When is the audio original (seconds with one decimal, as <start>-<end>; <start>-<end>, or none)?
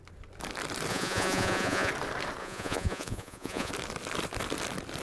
0.0-0.9; 1.9-2.4; 3.7-5.0